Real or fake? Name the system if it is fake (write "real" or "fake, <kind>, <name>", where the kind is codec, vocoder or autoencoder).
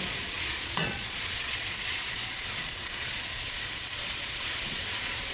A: fake, vocoder, Vocos